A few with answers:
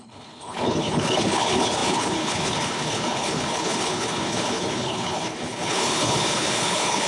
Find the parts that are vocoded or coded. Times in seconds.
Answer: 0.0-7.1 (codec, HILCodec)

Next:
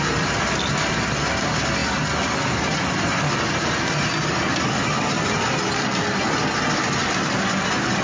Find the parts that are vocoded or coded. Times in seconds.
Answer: none

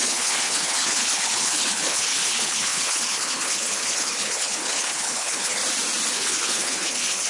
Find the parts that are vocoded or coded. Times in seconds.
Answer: 0.0-5.6 (codec, HILCodec); 6.1-7.3